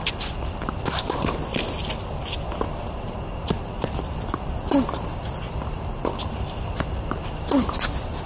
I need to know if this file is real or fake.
fake